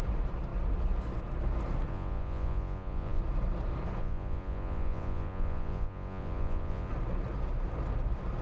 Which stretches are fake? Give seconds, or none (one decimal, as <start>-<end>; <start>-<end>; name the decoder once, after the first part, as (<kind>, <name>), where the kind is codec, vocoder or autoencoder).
1.9-3.2 (vocoder, Vocos); 4.0-6.9